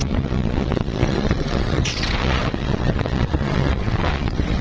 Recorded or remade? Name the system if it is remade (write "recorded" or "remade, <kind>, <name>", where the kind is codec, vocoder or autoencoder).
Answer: remade, vocoder, WaveNeXt